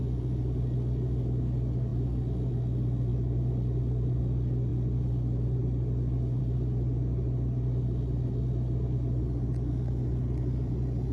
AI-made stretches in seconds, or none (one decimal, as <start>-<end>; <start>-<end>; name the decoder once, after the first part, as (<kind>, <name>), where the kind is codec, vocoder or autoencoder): none